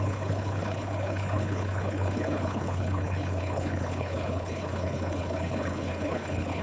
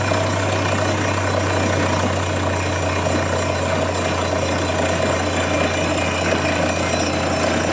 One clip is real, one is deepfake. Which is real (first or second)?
second